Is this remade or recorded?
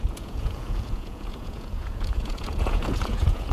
remade